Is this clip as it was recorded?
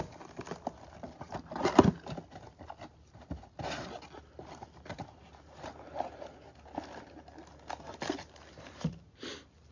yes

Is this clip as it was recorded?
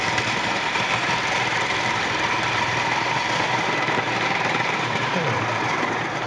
no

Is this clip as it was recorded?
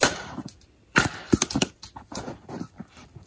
no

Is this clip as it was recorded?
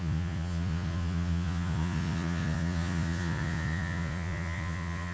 no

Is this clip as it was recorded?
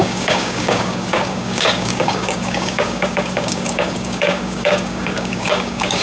no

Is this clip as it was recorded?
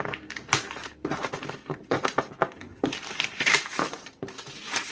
yes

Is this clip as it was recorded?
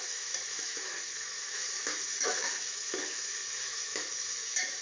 no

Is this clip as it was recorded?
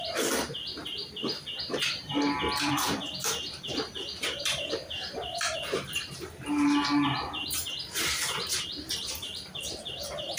no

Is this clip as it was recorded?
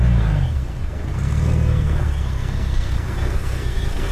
no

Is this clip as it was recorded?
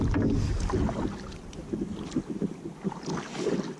yes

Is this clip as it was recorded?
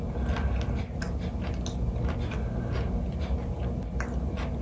yes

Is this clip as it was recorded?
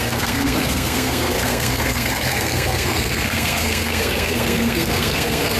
no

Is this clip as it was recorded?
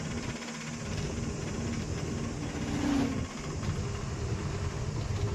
yes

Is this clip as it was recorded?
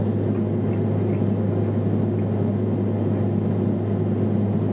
yes